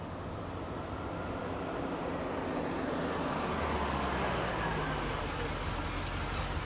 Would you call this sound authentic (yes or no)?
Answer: yes